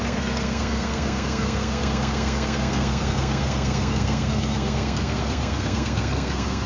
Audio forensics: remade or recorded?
remade